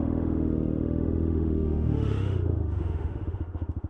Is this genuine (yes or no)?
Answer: no